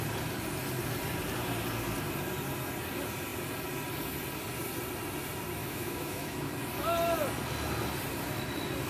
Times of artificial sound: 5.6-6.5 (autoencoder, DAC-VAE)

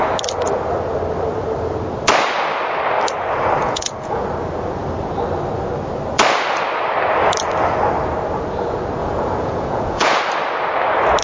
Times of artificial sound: 3.6-4.2 (vocoder, Vocos); 9.0-10.2

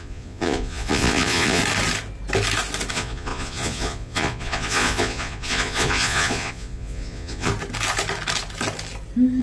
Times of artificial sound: 0.0-1.6 (vocoder, Vocos); 2.9-7.5

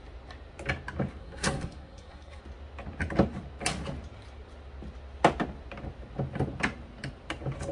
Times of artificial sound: 1.2-2.4 (codec, SNAC)

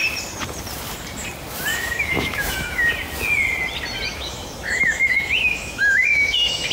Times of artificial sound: 1.7-2.9 (autoencoder, DAC-VAE); 4.1-6.7

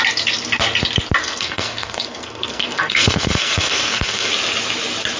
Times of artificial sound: 1.2-4.3 (codec, SNAC)

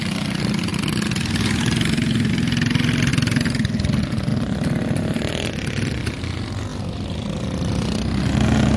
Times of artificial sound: none